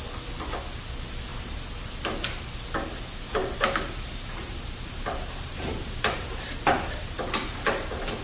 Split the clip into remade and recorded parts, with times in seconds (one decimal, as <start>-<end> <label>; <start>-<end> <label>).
0.0-1.3 recorded; 1.3-1.9 remade; 1.9-3.4 recorded; 3.4-8.2 remade